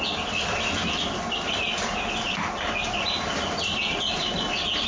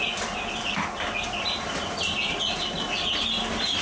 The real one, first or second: second